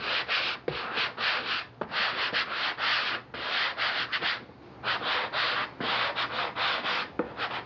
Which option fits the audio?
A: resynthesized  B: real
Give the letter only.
B